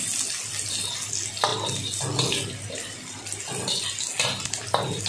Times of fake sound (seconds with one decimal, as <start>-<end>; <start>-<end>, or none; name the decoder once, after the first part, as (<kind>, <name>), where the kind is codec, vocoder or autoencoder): none